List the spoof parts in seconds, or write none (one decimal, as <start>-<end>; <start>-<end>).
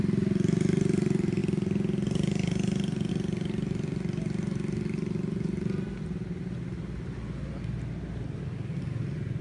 none